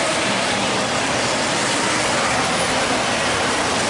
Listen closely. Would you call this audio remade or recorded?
recorded